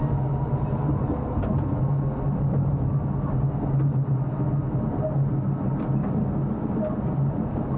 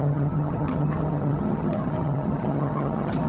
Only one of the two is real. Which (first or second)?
first